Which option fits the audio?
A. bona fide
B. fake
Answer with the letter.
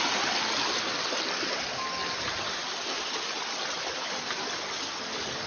A